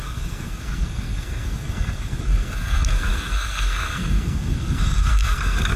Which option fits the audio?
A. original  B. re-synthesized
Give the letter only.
B